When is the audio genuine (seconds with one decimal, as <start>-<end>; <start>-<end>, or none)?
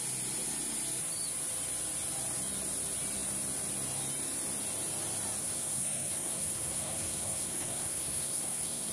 0.0-5.4